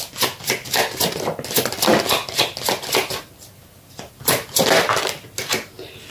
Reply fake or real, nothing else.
real